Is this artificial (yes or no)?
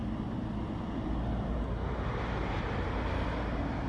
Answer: no